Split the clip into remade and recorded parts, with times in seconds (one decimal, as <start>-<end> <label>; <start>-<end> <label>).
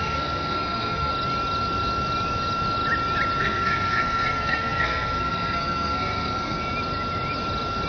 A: 0.0-1.1 remade; 1.1-3.4 recorded; 3.4-6.6 remade; 6.6-7.9 recorded